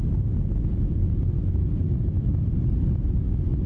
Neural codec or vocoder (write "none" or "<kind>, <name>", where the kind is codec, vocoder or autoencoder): none